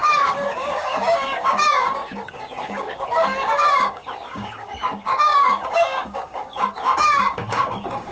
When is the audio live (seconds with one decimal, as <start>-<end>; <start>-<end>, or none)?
none